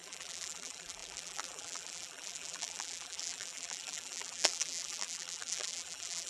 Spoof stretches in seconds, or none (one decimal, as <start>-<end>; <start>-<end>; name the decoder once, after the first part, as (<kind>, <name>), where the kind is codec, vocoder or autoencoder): 0.0-6.3 (vocoder, BigVGAN v2)